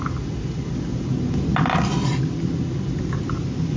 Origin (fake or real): real